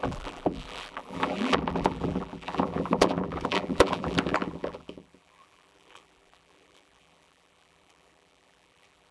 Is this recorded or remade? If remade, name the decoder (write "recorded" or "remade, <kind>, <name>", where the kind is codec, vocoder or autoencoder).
remade, vocoder, BigVGAN v2